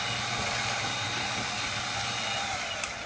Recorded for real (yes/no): yes